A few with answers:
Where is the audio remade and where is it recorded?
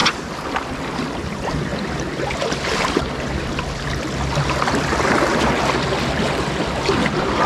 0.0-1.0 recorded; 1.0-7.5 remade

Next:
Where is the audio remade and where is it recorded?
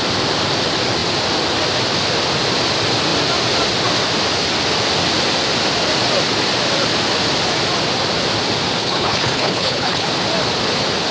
0.0-8.8 recorded; 8.8-10.1 remade; 10.1-11.1 recorded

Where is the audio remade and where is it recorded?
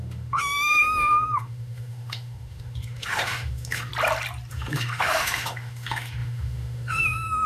0.0-3.9 remade; 3.9-4.5 recorded; 4.5-7.5 remade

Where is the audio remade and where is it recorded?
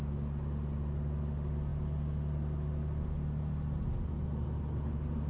0.0-5.3 recorded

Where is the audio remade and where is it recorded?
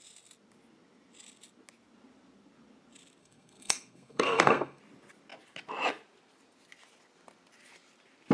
0.0-3.2 recorded; 3.2-4.8 remade; 4.8-8.3 recorded